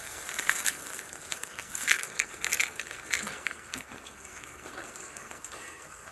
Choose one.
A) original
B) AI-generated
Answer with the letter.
B